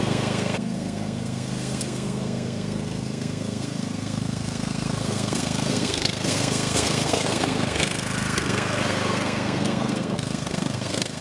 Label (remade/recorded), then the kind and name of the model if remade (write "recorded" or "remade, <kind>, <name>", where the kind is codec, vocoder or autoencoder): remade, codec, SNAC